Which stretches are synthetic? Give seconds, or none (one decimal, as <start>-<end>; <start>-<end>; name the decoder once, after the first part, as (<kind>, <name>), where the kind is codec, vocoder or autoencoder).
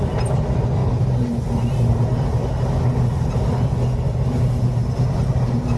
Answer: none